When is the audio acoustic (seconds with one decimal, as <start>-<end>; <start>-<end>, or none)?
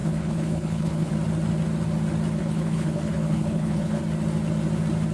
1.1-2.4; 4.0-5.1